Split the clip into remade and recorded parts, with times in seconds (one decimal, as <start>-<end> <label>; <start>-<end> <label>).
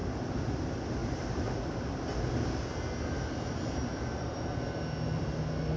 0.0-0.6 remade; 0.6-1.0 recorded; 1.0-1.6 remade; 1.6-5.8 recorded